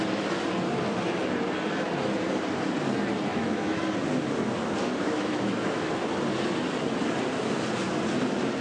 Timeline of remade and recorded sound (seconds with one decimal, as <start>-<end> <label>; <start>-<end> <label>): 0.0-3.3 recorded; 3.3-3.8 remade; 3.8-5.0 recorded; 5.0-5.9 remade; 5.9-8.6 recorded